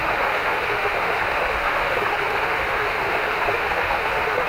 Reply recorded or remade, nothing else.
remade